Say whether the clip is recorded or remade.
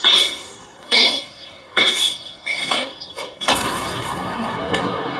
remade